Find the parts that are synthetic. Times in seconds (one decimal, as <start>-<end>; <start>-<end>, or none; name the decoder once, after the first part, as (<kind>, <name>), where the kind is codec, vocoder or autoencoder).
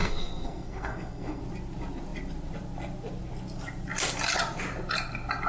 0.0-1.4 (codec, SNAC)